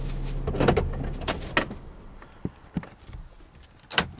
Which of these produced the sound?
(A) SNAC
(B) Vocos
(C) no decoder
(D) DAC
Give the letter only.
C